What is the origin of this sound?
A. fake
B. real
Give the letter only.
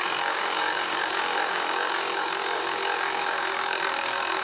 A